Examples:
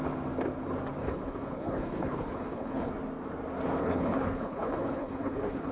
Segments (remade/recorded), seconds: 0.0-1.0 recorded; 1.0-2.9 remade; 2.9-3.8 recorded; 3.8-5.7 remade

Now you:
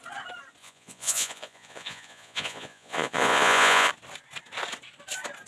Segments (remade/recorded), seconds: 0.0-0.6 recorded; 0.6-3.9 remade; 3.9-5.5 recorded

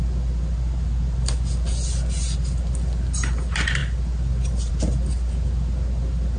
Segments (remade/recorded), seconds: 0.0-6.4 recorded

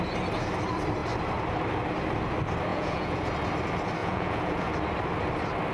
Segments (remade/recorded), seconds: 0.0-2.7 recorded; 2.7-3.3 remade; 3.3-4.0 recorded; 4.0-4.7 remade; 4.7-5.7 recorded